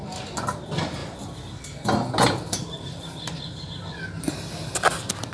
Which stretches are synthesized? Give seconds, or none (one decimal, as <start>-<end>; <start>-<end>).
none